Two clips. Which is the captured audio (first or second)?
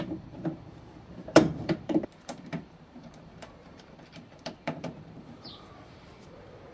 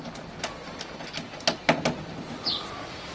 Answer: second